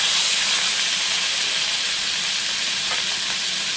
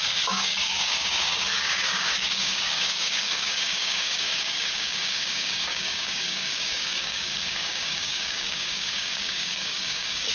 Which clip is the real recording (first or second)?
first